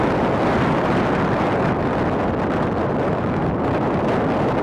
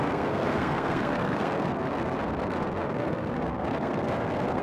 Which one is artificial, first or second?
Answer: second